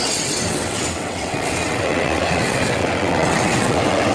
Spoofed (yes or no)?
yes